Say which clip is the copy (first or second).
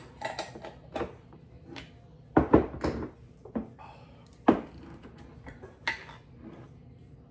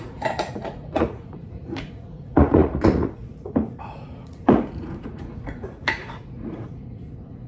second